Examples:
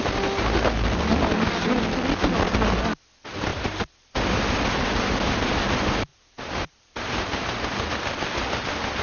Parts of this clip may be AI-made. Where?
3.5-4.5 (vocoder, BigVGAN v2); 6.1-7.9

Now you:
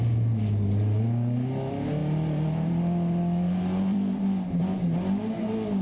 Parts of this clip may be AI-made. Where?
2.0-4.6 (vocoder, BigVGAN v2)

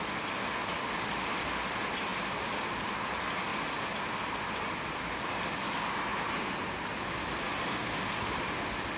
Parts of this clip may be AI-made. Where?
2.1-2.9 (vocoder, BigVGAN v2); 6.1-7.7

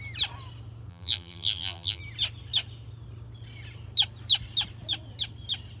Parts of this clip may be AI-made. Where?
0.9-2.0 (vocoder, BigVGAN v2)

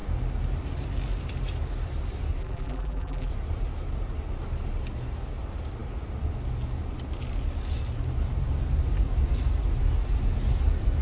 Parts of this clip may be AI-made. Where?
2.4-3.3 (vocoder, BigVGAN v2)